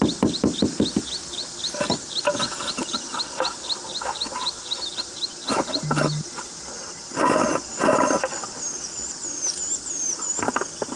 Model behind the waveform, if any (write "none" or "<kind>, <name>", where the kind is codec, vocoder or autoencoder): none